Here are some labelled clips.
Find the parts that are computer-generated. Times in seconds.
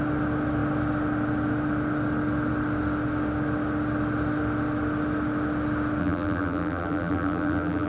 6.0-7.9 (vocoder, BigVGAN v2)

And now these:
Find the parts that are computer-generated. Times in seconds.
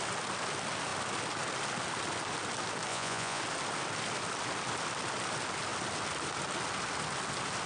2.9-3.4 (vocoder, Vocos)